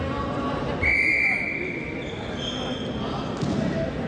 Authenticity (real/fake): real